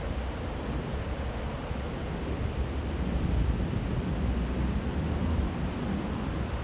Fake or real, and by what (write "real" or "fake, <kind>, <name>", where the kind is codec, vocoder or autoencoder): real